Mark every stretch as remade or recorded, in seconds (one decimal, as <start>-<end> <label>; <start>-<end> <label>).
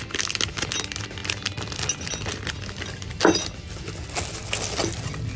0.0-5.4 recorded